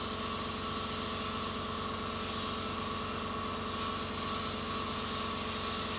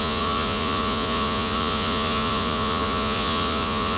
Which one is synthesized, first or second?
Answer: second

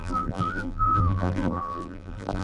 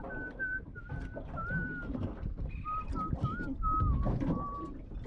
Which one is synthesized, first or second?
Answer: first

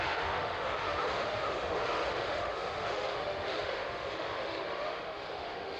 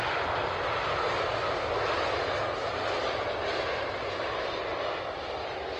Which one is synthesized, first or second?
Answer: first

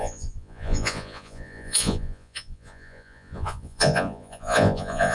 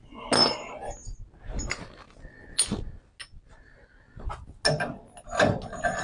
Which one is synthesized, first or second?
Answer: first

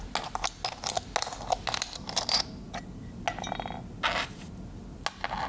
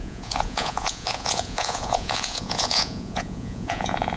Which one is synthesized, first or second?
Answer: second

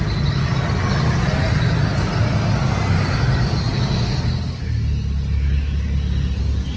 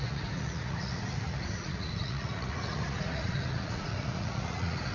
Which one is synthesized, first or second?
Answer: second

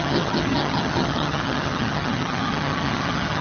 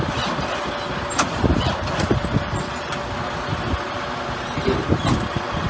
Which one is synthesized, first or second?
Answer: first